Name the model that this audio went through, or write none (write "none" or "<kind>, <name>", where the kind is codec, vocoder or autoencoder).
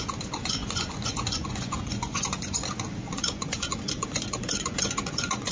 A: vocoder, Vocos